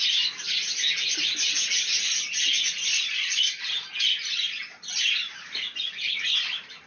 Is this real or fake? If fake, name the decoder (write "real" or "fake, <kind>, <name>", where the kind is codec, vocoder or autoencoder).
real